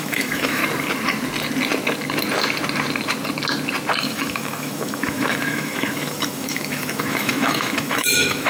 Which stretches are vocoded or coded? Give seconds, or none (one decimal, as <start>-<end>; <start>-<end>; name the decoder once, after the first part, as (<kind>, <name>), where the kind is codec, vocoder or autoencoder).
0.0-0.6 (autoencoder, DAC-VAE); 4.0-8.5